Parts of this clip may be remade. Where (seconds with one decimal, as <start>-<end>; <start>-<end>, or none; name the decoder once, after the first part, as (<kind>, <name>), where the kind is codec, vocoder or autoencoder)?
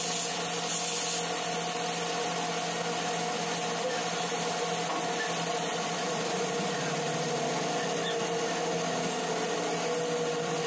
5.5-6.8 (vocoder, BigVGAN v2)